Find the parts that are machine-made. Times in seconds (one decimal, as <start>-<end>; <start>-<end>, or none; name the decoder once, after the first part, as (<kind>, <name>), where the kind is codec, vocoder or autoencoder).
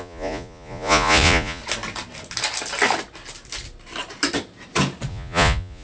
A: 0.0-1.6 (vocoder, Vocos); 5.1-5.8